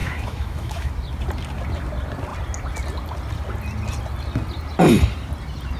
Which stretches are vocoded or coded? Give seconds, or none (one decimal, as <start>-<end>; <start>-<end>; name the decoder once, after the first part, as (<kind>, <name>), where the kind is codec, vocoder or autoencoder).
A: 0.0-0.9 (autoencoder, DAC-VAE)